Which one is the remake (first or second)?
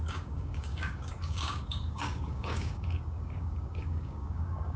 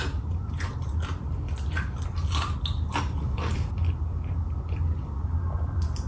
first